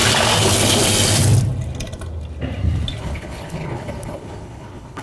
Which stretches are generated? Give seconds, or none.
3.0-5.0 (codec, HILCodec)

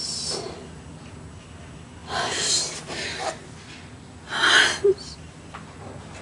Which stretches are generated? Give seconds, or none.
none

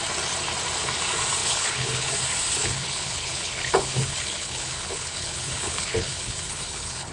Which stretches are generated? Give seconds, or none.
1.4-2.1 (codec, HILCodec); 2.6-7.1

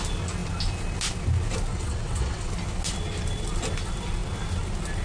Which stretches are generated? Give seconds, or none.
1.7-2.5 (vocoder, WaveNeXt)

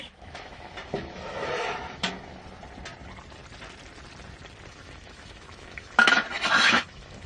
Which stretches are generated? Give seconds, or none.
0.0-2.3 (autoencoder, DAC-VAE); 4.7-7.3

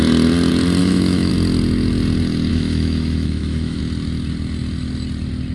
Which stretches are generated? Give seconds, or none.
0.8-1.3 (autoencoder, DAC-VAE); 2.5-3.8

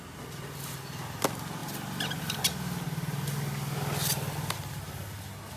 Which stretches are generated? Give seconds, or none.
none